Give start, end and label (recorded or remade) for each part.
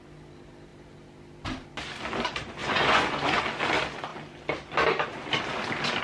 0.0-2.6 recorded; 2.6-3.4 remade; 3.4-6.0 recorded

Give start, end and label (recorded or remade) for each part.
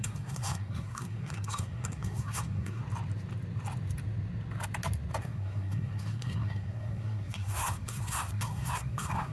0.0-2.8 remade; 2.8-5.2 recorded; 5.2-9.3 remade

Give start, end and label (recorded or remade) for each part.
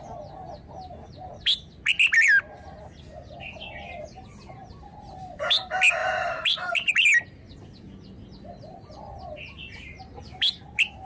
0.0-6.0 recorded; 6.0-6.9 remade; 6.9-11.0 recorded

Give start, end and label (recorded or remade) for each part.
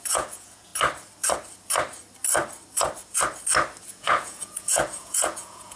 0.0-0.7 remade; 0.7-3.8 recorded; 3.8-5.8 remade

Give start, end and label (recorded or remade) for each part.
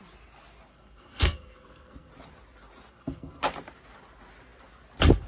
0.0-0.7 recorded; 0.7-2.1 remade; 2.1-2.9 recorded; 2.9-3.4 remade; 3.4-5.3 recorded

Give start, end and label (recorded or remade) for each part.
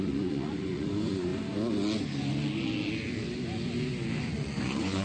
0.0-1.3 remade; 1.3-4.3 recorded; 4.3-5.0 remade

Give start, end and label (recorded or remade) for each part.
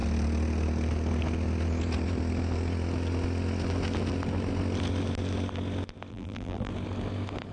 0.0-6.1 recorded; 6.1-6.7 remade; 6.7-7.5 recorded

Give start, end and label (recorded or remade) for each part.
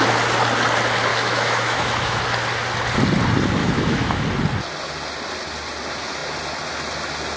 0.0-1.1 recorded; 1.1-2.2 remade; 2.2-3.6 recorded; 3.6-4.2 remade; 4.2-7.4 recorded